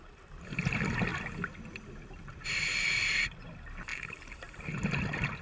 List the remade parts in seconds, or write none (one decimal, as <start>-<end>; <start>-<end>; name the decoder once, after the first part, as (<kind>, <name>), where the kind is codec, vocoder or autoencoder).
3.9-4.6 (vocoder, BigVGAN v2)